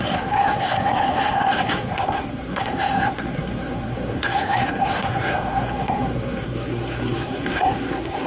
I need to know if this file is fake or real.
fake